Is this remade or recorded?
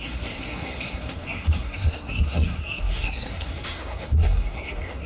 remade